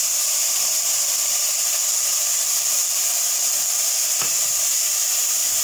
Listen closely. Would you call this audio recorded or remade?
remade